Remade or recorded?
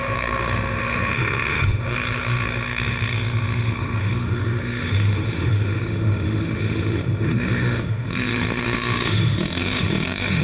remade